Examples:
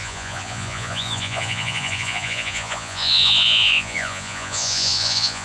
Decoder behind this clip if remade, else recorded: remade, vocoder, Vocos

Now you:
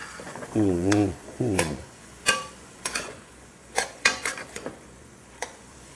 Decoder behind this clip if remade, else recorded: remade, vocoder, Vocos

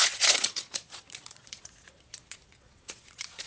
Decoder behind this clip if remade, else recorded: remade, vocoder, Vocos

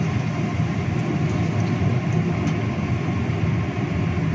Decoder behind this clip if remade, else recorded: recorded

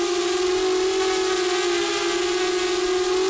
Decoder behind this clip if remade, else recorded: recorded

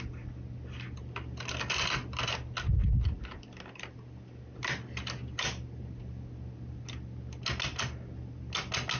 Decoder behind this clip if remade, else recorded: recorded